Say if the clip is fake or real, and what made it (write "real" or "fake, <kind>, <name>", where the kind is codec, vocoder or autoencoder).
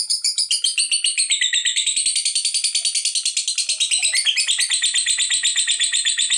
real